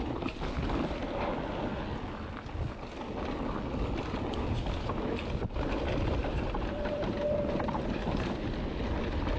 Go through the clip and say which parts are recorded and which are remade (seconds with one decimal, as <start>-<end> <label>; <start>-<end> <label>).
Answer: 0.0-6.2 recorded; 6.2-7.7 remade; 7.7-9.4 recorded